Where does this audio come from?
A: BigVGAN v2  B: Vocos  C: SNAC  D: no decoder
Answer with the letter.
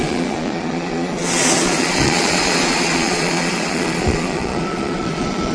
B